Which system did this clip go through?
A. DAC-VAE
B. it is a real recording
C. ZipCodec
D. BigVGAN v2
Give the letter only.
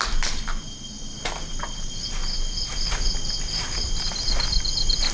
B